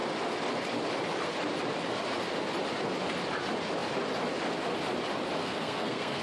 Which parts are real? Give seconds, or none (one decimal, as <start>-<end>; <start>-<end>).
0.0-5.4